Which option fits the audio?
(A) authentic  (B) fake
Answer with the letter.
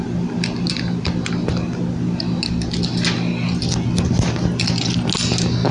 A